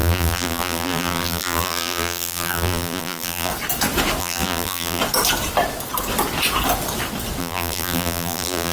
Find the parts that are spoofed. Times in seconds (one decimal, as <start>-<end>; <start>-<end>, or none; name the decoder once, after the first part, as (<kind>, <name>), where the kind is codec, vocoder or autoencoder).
0.0-3.5 (vocoder, BigVGAN v2); 4.2-5.0; 7.4-8.7